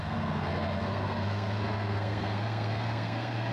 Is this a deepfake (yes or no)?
yes